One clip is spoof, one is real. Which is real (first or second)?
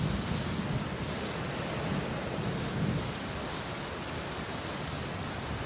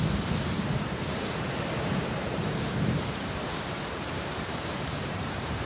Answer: first